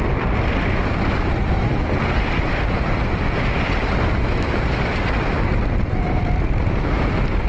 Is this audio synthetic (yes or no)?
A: yes